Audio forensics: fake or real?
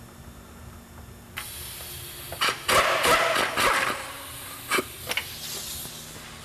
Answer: real